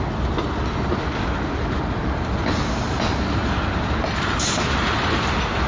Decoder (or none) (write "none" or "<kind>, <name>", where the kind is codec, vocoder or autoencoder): none